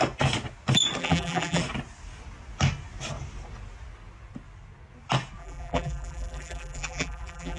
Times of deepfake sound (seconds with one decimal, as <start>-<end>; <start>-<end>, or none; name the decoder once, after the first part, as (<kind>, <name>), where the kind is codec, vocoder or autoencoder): 1.0-1.6 (vocoder, BigVGAN v2); 5.4-7.6